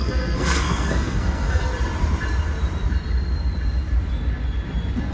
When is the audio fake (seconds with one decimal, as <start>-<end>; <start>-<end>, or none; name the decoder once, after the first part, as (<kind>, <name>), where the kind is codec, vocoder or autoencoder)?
0.0-1.7 (codec, SNAC)

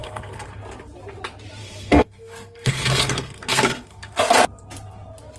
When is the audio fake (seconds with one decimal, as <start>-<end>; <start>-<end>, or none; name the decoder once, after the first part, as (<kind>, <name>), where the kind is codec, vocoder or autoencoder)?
0.0-0.6 (codec, SNAC); 1.6-4.2

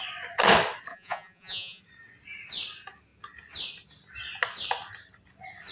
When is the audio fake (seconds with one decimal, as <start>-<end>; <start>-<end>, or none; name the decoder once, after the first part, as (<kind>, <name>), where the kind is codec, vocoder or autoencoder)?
0.9-1.8 (vocoder, Vocos)

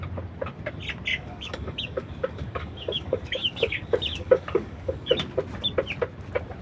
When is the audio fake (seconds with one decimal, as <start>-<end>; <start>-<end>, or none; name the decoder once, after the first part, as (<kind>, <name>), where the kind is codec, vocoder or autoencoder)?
1.1-5.1 (codec, DAC)

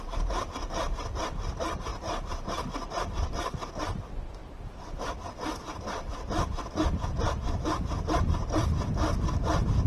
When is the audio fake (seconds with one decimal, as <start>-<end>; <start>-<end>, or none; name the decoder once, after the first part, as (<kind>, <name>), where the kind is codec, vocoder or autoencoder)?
1.9-3.7 (vocoder, BigVGAN v2); 4.4-5.1

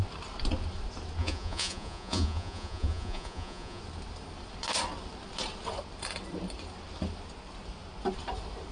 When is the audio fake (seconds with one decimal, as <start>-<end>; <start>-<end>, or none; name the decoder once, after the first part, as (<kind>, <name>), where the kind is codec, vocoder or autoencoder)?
1.2-3.8 (vocoder, Vocos)

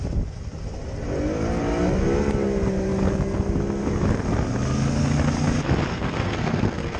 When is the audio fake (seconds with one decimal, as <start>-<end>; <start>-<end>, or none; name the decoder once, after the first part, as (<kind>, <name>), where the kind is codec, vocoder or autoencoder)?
5.9-7.0 (codec, SNAC)